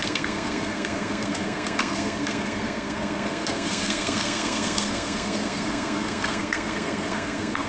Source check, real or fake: fake